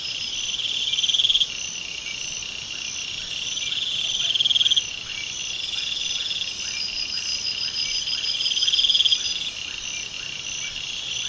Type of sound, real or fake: real